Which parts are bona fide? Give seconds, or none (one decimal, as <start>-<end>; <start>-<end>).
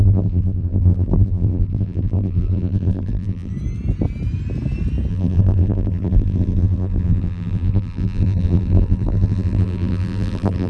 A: 3.5-5.1